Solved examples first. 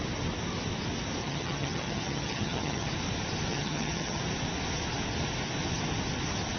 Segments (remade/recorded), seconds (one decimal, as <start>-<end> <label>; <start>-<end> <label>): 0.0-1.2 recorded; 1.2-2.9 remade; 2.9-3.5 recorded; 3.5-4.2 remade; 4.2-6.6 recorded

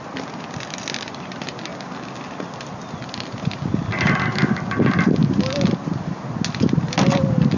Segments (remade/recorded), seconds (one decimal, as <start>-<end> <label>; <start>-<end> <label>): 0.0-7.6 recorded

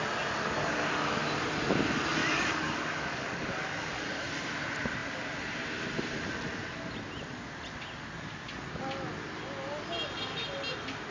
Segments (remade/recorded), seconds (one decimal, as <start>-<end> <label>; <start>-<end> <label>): 0.0-2.2 recorded; 2.2-4.3 remade; 4.3-11.1 recorded

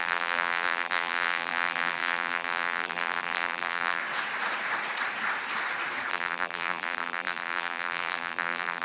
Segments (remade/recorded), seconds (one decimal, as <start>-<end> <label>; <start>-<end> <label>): 0.0-4.0 remade; 4.0-6.1 recorded; 6.1-8.8 remade